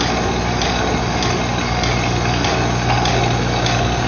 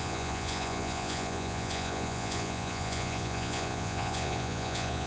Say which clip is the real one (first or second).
first